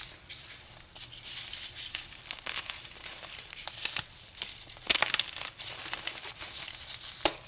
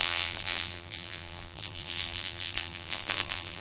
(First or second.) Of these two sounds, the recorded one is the first